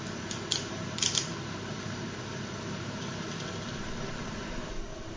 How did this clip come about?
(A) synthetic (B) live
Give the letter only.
A